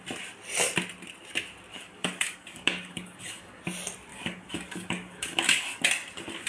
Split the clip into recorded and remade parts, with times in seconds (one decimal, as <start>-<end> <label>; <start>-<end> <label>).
0.0-1.7 recorded; 1.7-3.6 remade; 3.6-4.1 recorded; 4.1-5.9 remade; 5.9-6.5 recorded